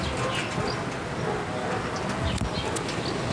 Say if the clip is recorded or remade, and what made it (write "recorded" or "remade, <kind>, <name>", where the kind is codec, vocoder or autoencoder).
recorded